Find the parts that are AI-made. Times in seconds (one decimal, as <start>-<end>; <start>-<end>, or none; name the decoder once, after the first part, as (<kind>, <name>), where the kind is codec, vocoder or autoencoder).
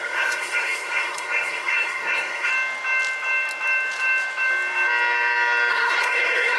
0.0-2.5 (codec, SNAC); 5.7-6.6